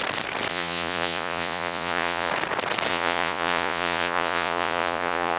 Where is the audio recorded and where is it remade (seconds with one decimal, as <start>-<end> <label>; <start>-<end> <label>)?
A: 0.0-0.5 recorded; 0.5-2.3 remade; 2.3-2.9 recorded; 2.9-5.4 remade